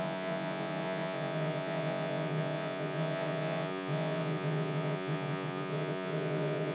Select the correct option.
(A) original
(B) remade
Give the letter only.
B